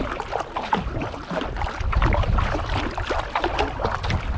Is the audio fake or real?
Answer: real